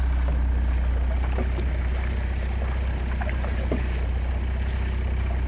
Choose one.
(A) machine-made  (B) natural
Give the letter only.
B